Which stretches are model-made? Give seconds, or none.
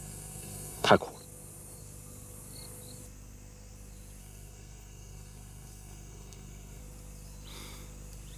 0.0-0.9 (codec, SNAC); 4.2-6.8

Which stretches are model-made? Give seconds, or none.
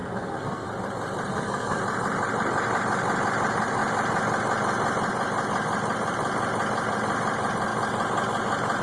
0.0-0.7 (codec, SNAC); 1.3-1.8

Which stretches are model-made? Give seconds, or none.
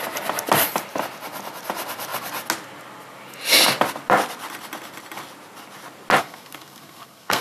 6.2-7.4 (codec, SNAC)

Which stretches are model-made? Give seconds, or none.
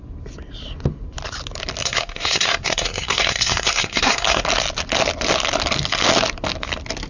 1.8-4.4 (codec, SNAC)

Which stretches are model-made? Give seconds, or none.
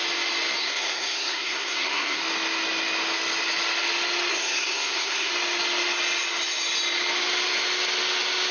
0.6-2.2 (codec, SNAC); 4.3-5.3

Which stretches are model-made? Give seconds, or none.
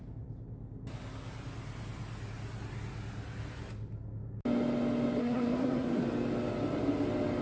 5.2-6.0 (codec, SNAC)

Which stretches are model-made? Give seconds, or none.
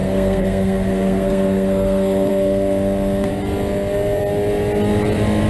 0.0-3.3 (codec, SNAC)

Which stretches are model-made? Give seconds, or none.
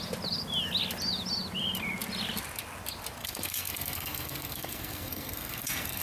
3.2-6.0 (codec, SNAC)